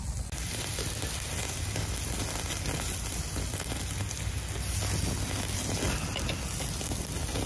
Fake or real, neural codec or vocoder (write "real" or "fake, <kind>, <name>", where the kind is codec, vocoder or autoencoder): real